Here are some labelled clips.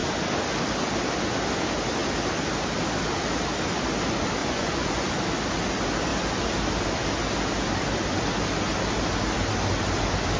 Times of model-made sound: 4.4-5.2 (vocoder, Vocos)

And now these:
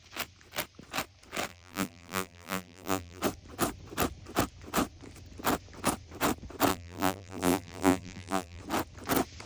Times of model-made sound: 1.5-3.2 (vocoder, BigVGAN v2); 6.7-8.6

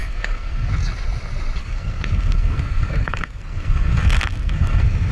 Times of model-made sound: 0.0-0.7 (codec, SNAC); 1.6-5.1

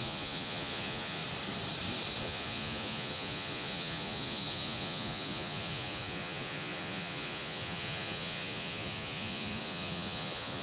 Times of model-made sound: 0.0-1.2 (vocoder, Vocos); 2.2-10.6

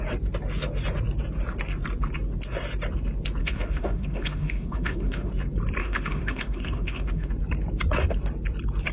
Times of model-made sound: 3.4-5.3 (autoencoder, DAC-VAE); 5.8-7.3

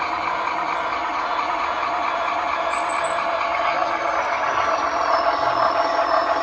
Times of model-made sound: 1.0-1.8 (vocoder, Vocos)